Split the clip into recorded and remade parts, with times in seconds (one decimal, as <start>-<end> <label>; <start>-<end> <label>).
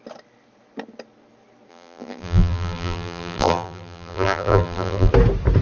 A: 0.0-1.7 recorded; 1.7-5.1 remade; 5.1-5.6 recorded